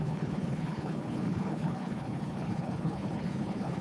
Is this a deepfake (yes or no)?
yes